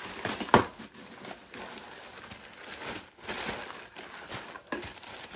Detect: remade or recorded recorded